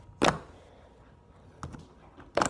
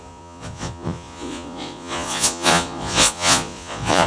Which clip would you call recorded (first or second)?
first